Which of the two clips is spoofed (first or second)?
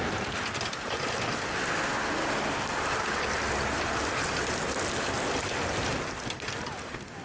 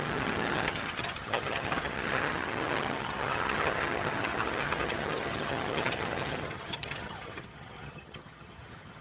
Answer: second